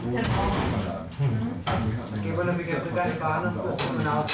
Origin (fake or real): real